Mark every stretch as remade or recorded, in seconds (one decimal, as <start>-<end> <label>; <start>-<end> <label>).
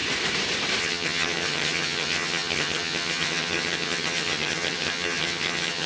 0.0-0.8 recorded; 0.8-5.9 remade